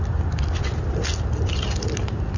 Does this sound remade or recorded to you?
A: recorded